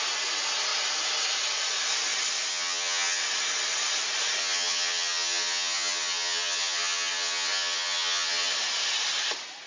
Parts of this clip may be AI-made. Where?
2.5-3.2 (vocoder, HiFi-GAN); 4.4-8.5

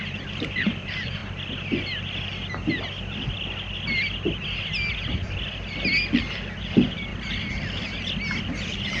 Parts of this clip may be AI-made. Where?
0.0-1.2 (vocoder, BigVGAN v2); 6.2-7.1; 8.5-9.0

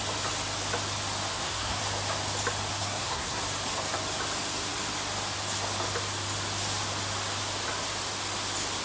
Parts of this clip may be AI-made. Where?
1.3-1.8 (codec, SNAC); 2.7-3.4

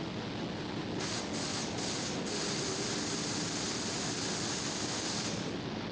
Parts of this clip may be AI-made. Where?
none

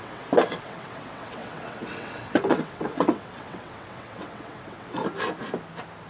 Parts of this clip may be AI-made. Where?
0.0-5.0 (vocoder, WaveNeXt)